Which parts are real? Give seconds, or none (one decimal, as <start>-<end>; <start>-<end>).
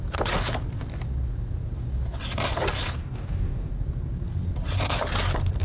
0.0-3.0; 3.7-5.6